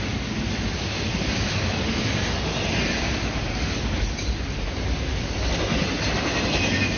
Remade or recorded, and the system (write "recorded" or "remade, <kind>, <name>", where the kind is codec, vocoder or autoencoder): recorded